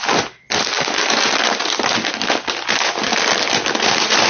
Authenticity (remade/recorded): recorded